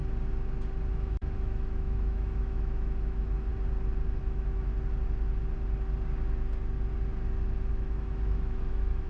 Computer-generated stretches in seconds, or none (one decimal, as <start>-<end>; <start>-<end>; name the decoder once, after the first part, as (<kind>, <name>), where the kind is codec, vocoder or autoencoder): 0.9-3.5 (autoencoder, DAC-VAE); 4.2-4.7; 7.7-9.1

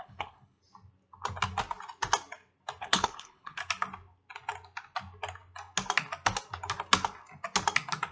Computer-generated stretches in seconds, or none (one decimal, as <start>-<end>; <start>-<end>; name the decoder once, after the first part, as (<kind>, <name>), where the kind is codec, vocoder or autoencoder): 0.0-0.6 (codec, HILCodec); 2.8-3.6

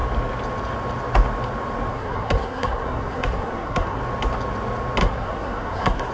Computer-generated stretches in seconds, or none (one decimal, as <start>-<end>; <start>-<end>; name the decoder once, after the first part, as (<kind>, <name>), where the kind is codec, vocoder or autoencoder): 1.9-4.0 (codec, SNAC); 5.0-6.1

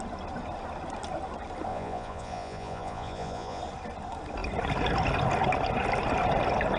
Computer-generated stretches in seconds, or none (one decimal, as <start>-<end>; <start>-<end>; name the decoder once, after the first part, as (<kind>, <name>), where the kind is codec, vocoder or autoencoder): 1.7-3.6 (vocoder, Vocos)